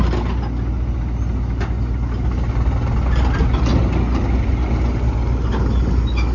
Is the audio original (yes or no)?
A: yes